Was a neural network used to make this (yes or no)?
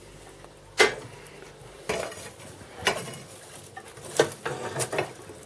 no